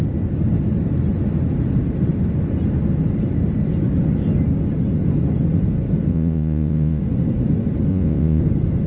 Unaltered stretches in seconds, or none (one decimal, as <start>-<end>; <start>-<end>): 0.0-6.1; 7.0-7.9; 8.4-8.9